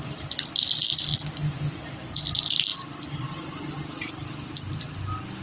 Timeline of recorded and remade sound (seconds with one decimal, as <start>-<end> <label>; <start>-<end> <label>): 0.0-5.4 recorded